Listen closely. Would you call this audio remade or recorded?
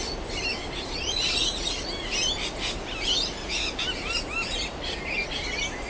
recorded